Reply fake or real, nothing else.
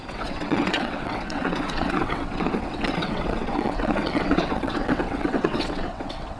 fake